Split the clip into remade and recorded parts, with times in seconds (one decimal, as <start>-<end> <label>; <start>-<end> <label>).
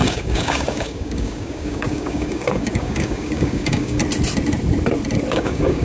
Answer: 0.0-4.0 remade; 4.0-5.3 recorded; 5.3-5.8 remade